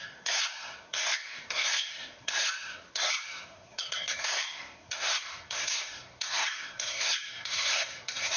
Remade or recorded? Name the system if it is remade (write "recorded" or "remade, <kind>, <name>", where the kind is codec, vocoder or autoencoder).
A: remade, codec, SNAC